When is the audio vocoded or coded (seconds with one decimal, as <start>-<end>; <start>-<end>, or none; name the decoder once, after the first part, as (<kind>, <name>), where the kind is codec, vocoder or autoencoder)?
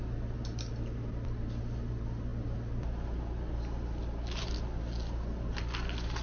none